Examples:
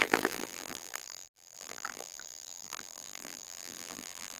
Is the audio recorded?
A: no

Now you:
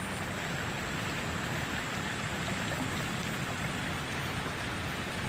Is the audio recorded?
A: yes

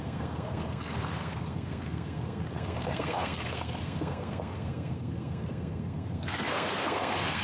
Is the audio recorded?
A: no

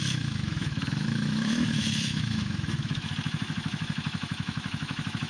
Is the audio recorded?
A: no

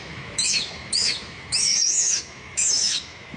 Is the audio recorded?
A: no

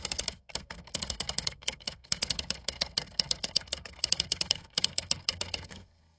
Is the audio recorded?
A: no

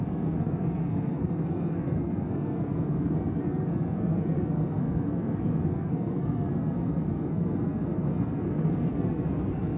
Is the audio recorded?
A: no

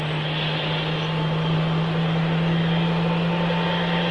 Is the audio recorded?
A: yes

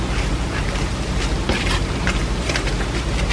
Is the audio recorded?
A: yes